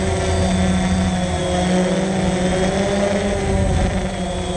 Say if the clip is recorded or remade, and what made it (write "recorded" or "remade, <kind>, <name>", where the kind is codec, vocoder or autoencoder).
recorded